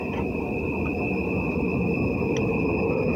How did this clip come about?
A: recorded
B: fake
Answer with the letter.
A